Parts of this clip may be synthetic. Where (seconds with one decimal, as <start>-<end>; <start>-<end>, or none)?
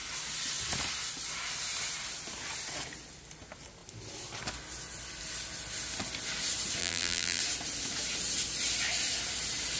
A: 6.8-7.4